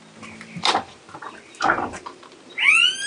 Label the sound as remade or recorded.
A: recorded